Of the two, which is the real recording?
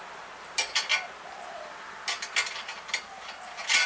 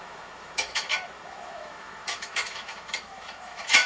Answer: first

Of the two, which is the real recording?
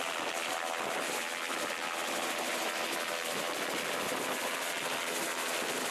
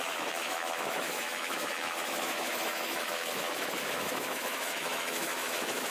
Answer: first